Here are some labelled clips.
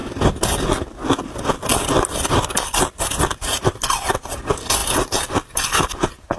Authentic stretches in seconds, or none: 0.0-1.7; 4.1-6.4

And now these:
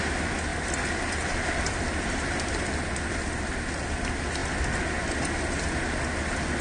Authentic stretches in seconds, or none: 0.0-0.5; 3.9-6.6

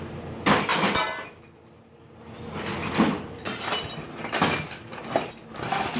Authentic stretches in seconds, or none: 0.0-6.0

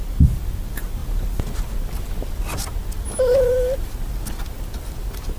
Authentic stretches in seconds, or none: 0.0-5.4

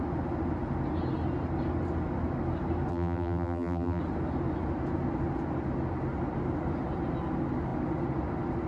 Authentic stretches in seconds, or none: 0.0-2.9; 4.0-8.7

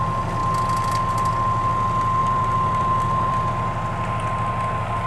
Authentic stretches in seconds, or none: 0.0-2.2; 3.5-5.1

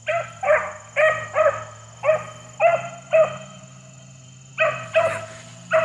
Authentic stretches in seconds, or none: 0.0-2.7; 4.5-5.8

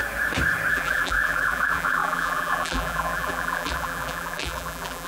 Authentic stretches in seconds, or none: 0.0-0.7